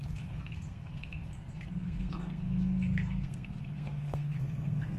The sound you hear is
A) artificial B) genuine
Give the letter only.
A